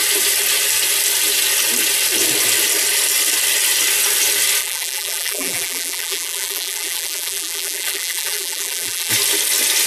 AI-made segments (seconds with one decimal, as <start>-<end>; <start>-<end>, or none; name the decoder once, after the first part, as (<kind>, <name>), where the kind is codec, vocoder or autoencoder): 4.6-9.1 (vocoder, BigVGAN v2)